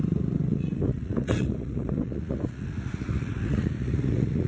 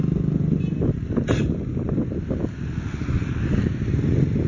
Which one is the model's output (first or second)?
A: first